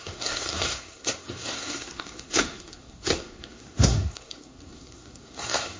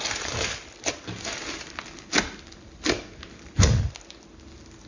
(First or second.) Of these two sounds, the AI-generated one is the first